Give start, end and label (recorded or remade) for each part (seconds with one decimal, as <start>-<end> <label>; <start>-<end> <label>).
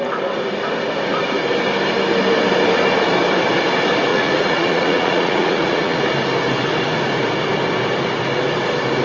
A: 0.0-4.1 recorded; 4.1-6.0 remade; 6.0-9.0 recorded